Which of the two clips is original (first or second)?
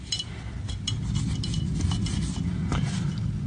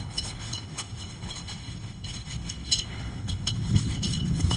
first